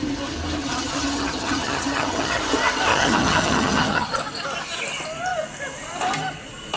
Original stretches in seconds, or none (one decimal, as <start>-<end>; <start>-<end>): 0.0-0.6; 2.4-2.9; 4.2-6.8